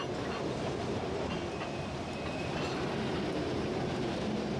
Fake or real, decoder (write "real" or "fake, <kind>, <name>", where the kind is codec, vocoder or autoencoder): real